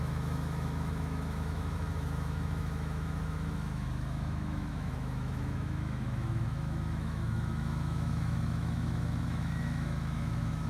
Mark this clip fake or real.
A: fake